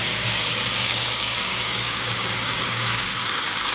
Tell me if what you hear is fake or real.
fake